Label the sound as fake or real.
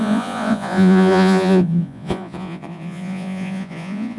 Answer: fake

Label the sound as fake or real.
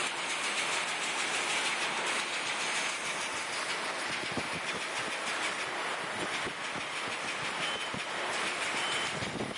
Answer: real